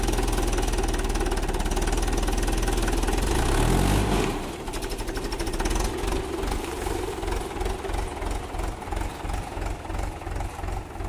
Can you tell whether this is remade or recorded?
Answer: recorded